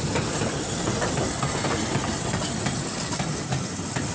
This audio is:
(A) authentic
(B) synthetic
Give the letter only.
A